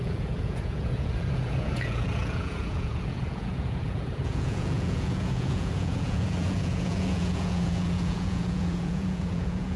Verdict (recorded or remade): remade